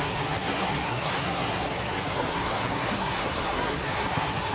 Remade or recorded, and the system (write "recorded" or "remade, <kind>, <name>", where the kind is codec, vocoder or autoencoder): remade, codec, SNAC